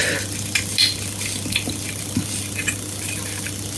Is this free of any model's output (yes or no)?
yes